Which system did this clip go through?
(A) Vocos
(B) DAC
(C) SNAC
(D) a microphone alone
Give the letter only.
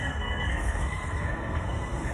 C